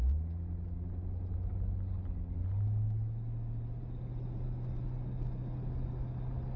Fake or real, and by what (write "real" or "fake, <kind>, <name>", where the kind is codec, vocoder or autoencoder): real